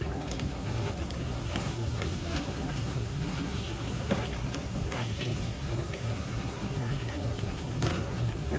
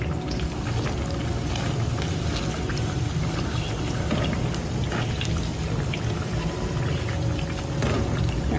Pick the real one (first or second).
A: second